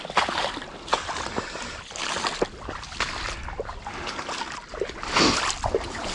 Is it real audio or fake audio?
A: real